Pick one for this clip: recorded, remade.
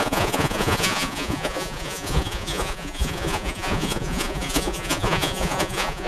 remade